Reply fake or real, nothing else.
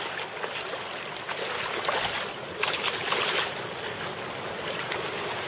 real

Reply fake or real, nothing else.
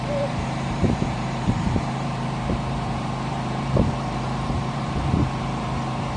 fake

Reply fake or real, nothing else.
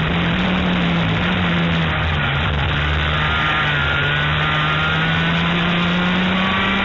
real